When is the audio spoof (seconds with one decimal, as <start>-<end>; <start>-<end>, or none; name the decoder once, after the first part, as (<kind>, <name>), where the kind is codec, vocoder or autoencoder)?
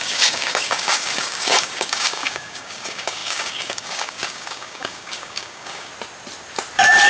0.0-5.9 (codec, DAC)